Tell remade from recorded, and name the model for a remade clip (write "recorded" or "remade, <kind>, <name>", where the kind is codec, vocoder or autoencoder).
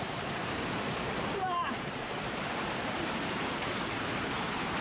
remade, vocoder, BigVGAN v2